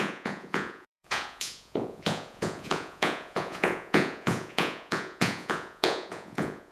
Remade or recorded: remade